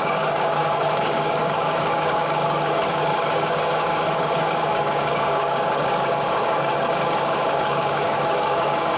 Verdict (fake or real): fake